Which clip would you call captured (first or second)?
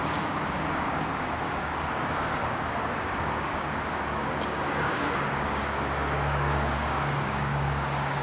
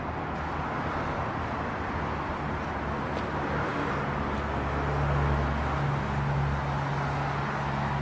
second